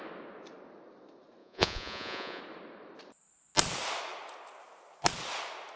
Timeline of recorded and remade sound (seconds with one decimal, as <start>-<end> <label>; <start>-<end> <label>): 0.0-1.4 recorded; 1.4-2.4 remade; 2.4-5.8 recorded